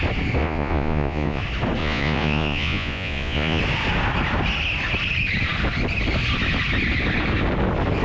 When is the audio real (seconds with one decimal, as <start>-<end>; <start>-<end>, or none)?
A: 0.0-0.4; 1.4-1.8; 3.6-8.0